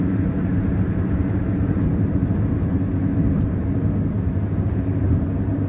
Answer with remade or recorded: remade